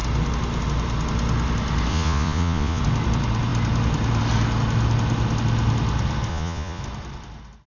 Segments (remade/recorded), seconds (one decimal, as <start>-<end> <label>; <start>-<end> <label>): 0.0-1.9 recorded; 1.9-2.8 remade; 2.8-6.3 recorded; 6.3-6.8 remade; 6.8-7.7 recorded